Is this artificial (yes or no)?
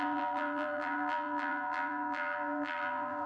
yes